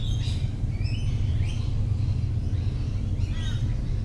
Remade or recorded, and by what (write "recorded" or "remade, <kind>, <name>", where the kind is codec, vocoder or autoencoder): recorded